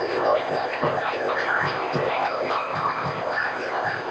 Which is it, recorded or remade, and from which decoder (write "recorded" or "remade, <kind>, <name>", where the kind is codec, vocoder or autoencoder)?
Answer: remade, codec, ZipCodec